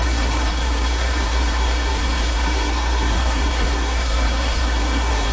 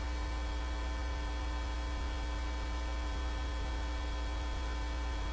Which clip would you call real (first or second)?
second